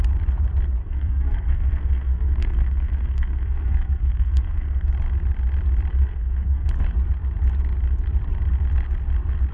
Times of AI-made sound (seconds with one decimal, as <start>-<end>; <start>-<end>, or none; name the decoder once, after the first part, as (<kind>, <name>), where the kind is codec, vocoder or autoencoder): 0.8-4.9 (codec, SNAC); 5.9-6.7